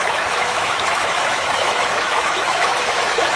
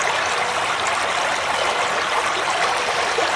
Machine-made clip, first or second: first